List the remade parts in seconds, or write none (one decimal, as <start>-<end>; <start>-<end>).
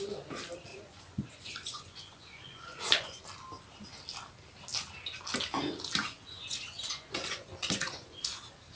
0.7-3.2; 6.0-8.2